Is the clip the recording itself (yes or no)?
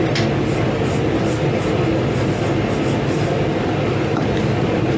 yes